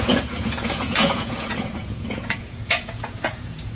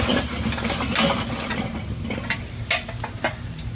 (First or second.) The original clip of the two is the second